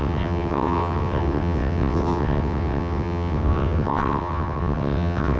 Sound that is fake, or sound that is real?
fake